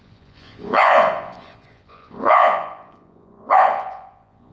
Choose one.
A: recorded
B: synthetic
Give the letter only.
B